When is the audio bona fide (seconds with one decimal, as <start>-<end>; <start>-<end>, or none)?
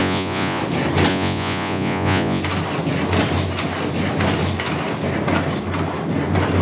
0.6-1.1; 2.4-6.6